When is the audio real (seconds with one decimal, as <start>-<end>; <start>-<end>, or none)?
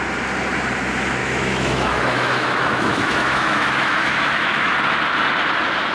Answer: 0.0-1.2; 4.7-5.9